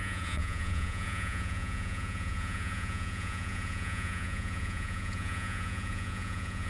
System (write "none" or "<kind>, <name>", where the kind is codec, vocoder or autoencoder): vocoder, Vocos